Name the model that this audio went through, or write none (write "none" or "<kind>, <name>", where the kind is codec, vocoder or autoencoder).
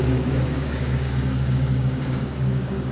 codec, DAC